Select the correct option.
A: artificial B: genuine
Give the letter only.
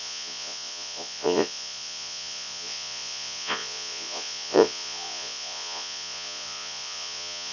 A